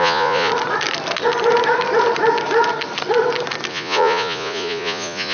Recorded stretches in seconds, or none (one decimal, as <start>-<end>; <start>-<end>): 0.5-3.7